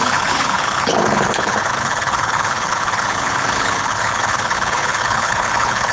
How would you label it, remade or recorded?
remade